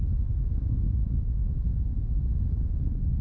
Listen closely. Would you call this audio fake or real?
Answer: real